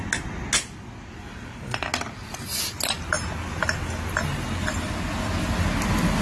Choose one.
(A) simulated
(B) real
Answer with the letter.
B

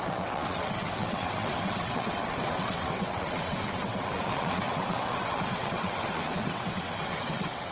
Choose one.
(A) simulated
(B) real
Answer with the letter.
A